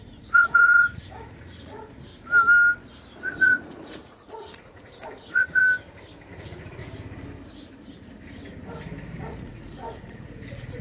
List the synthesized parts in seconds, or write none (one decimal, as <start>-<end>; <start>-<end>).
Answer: 0.0-2.1; 3.2-5.6; 6.3-6.8; 9.2-10.8